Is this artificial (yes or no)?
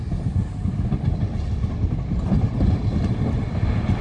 no